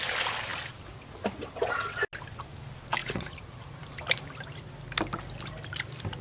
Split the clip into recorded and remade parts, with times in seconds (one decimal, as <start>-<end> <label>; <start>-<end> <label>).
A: 0.0-3.0 recorded; 3.0-3.8 remade; 3.8-6.2 recorded